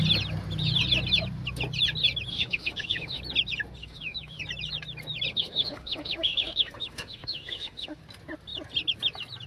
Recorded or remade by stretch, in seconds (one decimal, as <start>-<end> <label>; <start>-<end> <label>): 0.0-2.3 recorded; 2.3-3.2 remade; 3.2-3.8 recorded; 3.8-4.4 remade; 4.4-5.3 recorded; 5.3-8.0 remade; 8.0-9.5 recorded